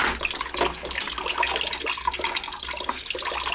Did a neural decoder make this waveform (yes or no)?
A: no